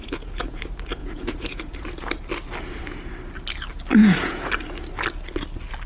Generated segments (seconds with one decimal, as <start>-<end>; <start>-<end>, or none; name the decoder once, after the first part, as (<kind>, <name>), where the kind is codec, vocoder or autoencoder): 0.0-0.6 (vocoder, Vocos); 1.0-2.1; 4.0-4.5